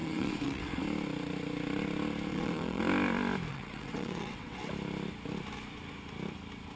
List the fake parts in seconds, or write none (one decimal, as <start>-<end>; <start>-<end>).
0.0-0.8; 2.3-2.8; 3.5-4.6